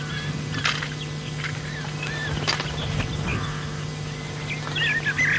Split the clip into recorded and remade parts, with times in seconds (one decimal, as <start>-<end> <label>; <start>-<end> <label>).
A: 0.0-5.4 recorded